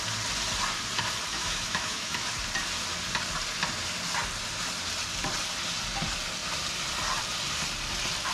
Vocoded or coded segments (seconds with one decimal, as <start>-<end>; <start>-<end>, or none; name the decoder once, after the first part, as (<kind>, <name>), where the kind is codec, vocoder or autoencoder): 1.3-2.3 (autoencoder, DAC-VAE)